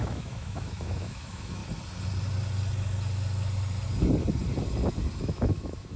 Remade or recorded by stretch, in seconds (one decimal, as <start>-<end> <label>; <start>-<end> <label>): 0.0-1.6 remade; 1.6-5.2 recorded; 5.2-6.0 remade